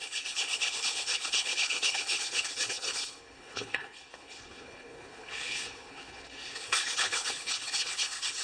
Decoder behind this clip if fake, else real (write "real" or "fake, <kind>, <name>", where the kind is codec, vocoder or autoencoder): fake, codec, HILCodec